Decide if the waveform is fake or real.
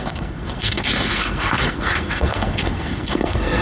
fake